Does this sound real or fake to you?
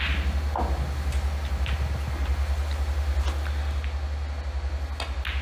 real